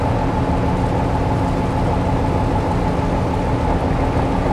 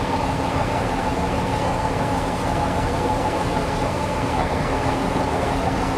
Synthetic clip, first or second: second